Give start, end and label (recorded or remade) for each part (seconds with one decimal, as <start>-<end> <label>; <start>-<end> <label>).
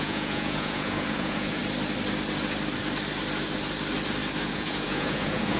0.0-1.6 remade; 1.6-4.4 recorded; 4.4-5.6 remade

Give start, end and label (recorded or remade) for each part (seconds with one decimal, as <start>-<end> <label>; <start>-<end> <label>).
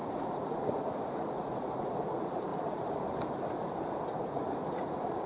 0.0-2.5 remade; 2.5-4.1 recorded; 4.1-5.3 remade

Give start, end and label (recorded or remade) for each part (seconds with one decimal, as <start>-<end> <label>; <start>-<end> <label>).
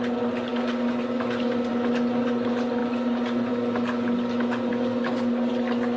0.0-6.0 recorded